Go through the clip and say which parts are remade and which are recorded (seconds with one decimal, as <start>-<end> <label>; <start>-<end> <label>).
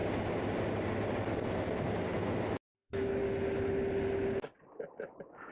0.0-2.1 recorded; 2.1-3.2 remade; 3.2-5.5 recorded